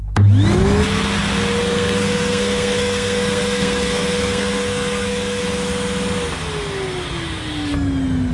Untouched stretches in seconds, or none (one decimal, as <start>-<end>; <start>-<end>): 0.0-1.6; 5.4-8.3